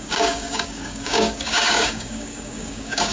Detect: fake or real fake